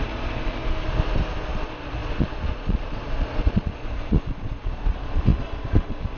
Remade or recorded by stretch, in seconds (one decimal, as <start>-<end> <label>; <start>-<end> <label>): 0.0-0.6 remade; 0.6-1.5 recorded; 1.5-6.2 remade